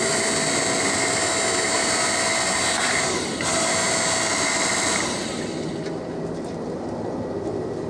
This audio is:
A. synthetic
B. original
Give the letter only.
B